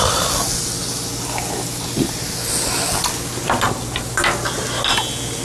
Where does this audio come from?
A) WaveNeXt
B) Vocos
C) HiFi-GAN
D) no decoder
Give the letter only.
D